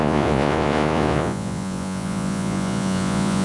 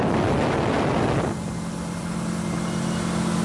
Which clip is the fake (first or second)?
first